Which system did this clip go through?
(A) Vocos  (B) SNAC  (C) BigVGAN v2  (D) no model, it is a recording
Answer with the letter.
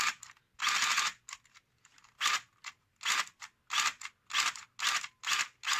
D